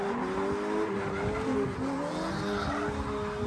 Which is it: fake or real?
real